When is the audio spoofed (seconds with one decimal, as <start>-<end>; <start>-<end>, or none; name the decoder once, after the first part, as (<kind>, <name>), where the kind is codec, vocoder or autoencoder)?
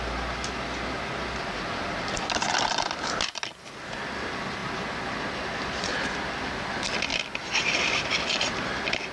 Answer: none